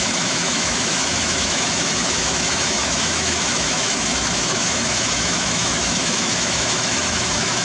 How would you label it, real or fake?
fake